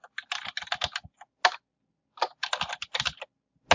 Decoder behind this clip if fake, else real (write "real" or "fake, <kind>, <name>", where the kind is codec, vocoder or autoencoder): real